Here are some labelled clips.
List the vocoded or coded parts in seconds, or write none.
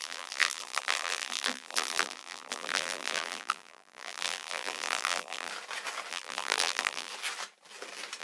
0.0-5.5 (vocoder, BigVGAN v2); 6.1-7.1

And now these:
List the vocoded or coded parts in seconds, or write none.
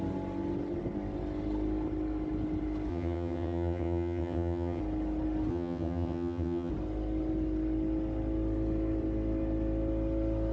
2.9-4.8 (vocoder, HiFi-GAN); 5.5-6.7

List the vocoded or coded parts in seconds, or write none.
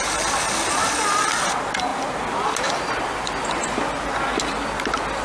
none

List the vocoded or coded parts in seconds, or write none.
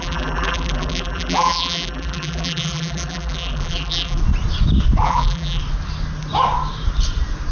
0.0-4.2 (vocoder, BigVGAN v2); 5.0-5.6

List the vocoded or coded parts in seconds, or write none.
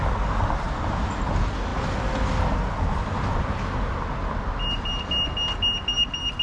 none